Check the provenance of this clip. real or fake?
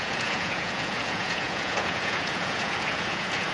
fake